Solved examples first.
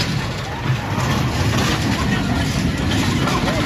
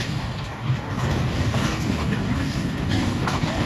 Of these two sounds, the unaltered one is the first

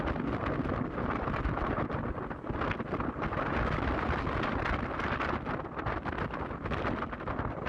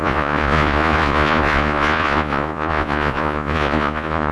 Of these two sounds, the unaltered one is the first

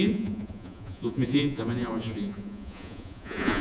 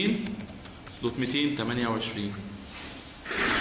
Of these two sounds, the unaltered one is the second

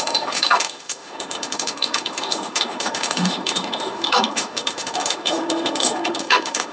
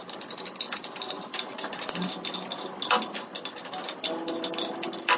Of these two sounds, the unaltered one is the second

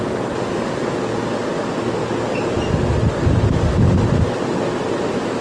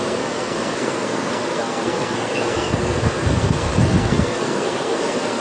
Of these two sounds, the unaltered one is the first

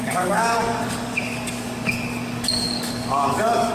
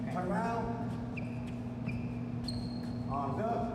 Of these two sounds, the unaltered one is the second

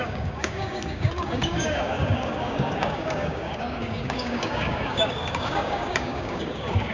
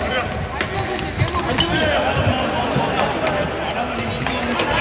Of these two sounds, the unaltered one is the second